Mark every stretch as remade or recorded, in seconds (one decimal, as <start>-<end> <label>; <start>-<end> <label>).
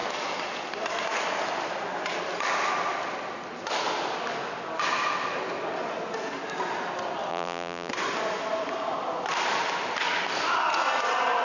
0.0-7.3 recorded; 7.3-7.9 remade; 7.9-11.4 recorded